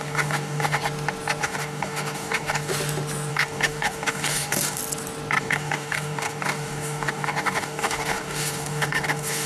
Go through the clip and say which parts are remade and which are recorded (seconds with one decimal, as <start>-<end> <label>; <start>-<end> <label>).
0.0-0.8 remade; 0.8-1.4 recorded; 1.4-2.7 remade; 2.7-3.3 recorded; 3.3-4.8 remade; 4.8-5.4 recorded; 5.4-9.5 remade